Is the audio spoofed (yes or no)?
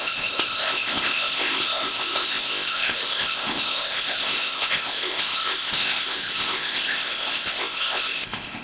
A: yes